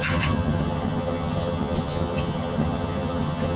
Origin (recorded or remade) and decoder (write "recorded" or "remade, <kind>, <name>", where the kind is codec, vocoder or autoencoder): remade, vocoder, HiFi-GAN